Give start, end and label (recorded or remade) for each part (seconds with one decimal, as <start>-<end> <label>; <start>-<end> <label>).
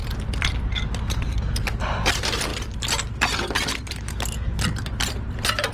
0.0-1.5 recorded; 1.5-2.5 remade; 2.5-3.9 recorded; 3.9-4.5 remade; 4.5-5.1 recorded; 5.1-5.7 remade